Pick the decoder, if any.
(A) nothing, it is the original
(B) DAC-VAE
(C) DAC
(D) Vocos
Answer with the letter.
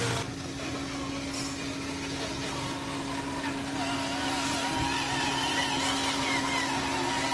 A